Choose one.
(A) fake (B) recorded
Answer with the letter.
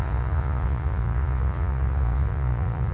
A